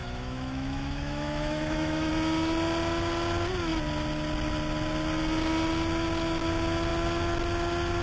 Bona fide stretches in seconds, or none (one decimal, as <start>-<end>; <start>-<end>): 2.1-8.0